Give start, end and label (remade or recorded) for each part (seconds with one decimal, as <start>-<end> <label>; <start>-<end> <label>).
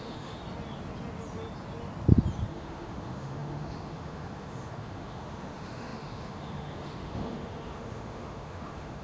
0.0-0.4 remade; 0.4-2.5 recorded; 2.5-9.0 remade